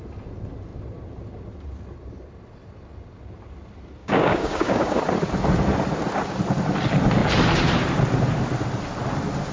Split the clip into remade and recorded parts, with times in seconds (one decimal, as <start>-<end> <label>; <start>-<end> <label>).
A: 0.0-4.0 recorded; 4.0-5.0 remade; 5.0-9.5 recorded

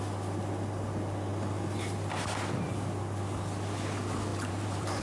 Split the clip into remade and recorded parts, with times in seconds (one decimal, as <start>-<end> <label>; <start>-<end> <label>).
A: 0.0-4.3 recorded; 4.3-5.0 remade

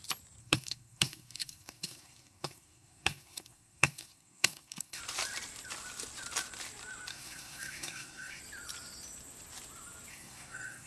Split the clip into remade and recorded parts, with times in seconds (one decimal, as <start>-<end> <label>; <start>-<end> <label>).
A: 0.0-0.4 recorded; 0.4-5.0 remade; 5.0-7.1 recorded; 7.1-8.4 remade; 8.4-10.1 recorded; 10.1-10.9 remade

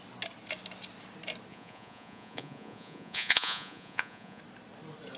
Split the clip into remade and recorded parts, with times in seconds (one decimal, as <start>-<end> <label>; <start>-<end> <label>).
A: 0.0-1.5 recorded; 1.5-4.4 remade; 4.4-5.2 recorded

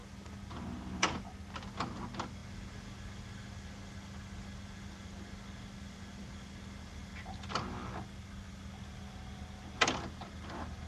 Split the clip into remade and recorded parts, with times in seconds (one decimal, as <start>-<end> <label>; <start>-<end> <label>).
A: 0.0-10.9 recorded

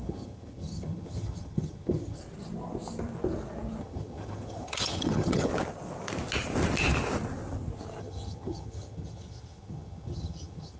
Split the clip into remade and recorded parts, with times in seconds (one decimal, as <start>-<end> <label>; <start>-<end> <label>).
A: 0.0-2.2 remade; 2.2-3.8 recorded; 3.8-5.5 remade; 5.5-8.0 recorded; 8.0-10.8 remade